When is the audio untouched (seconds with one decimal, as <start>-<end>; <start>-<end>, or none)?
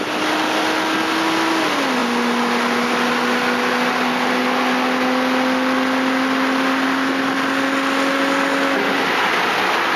0.0-10.0